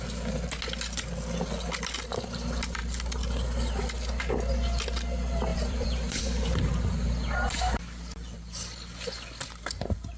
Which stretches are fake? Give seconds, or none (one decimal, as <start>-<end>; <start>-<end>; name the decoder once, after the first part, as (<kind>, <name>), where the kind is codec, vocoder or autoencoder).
5.5-6.2 (vocoder, BigVGAN v2)